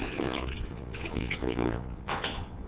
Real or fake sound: fake